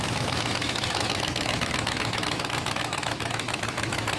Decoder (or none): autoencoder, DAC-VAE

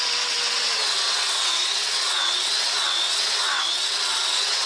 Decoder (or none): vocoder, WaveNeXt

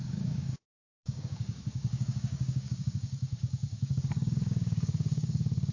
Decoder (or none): codec, DAC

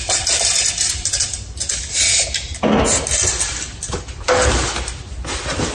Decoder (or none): none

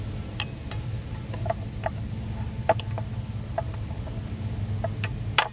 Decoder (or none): none